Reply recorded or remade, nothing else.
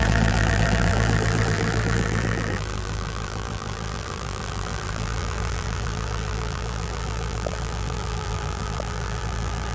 remade